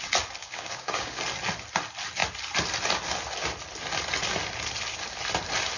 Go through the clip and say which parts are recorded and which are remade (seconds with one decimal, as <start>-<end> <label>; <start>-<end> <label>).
0.0-0.4 recorded; 0.4-1.2 remade; 1.2-5.8 recorded